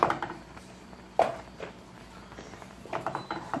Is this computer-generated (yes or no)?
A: yes